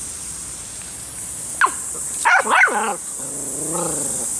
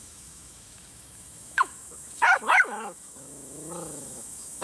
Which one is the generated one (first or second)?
second